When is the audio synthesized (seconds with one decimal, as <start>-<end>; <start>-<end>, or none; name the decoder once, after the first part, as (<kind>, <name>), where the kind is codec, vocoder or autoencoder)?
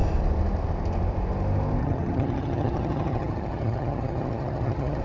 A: 1.8-5.0 (vocoder, HiFi-GAN)